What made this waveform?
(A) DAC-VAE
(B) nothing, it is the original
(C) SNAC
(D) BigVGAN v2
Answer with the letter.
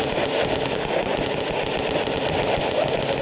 B